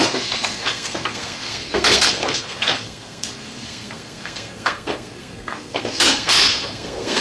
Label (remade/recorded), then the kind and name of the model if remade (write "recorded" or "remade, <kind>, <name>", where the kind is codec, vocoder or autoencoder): remade, codec, SNAC